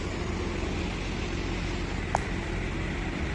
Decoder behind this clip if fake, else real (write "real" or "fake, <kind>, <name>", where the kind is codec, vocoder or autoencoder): real